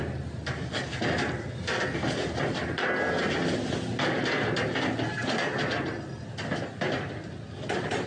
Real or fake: real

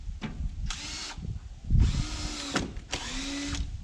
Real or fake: real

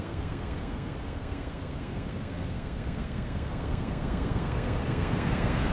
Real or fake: fake